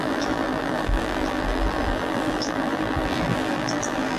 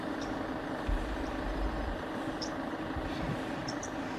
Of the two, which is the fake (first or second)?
first